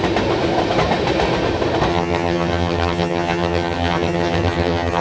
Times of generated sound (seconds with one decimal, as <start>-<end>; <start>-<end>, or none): 1.9-5.0